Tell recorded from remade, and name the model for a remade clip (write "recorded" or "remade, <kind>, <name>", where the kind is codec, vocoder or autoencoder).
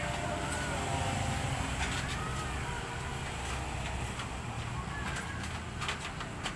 recorded